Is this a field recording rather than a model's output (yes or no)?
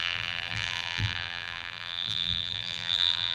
no